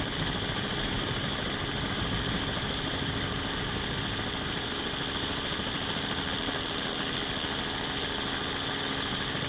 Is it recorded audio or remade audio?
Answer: recorded